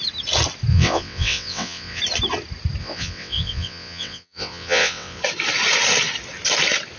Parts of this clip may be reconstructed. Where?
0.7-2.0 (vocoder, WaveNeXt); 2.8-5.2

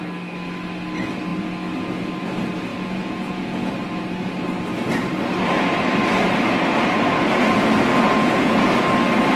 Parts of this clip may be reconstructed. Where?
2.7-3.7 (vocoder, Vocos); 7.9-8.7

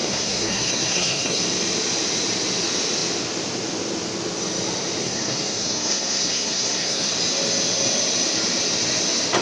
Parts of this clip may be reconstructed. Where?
0.0-1.4 (codec, SNAC); 5.0-7.1

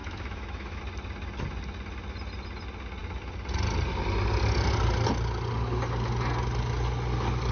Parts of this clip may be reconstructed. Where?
0.0-0.8 (autoencoder, DAC-VAE)

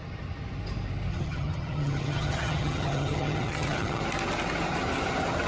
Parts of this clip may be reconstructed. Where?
1.1-4.0 (vocoder, HiFi-GAN)